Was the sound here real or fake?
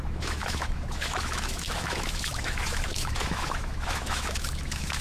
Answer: fake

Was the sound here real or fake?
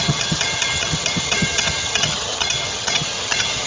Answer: fake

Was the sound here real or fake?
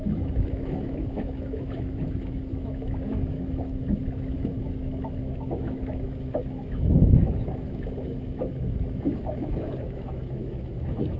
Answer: fake